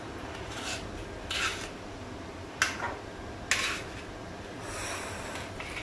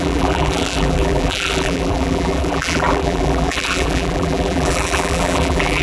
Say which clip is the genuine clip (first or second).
first